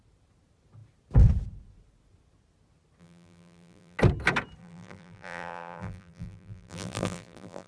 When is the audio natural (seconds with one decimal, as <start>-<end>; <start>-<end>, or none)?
0.0-3.0; 4.0-4.6